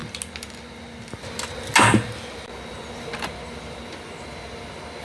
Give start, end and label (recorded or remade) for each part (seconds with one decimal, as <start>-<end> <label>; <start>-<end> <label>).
0.0-5.0 recorded